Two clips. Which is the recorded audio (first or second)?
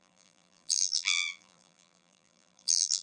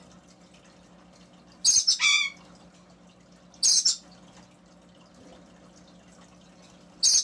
second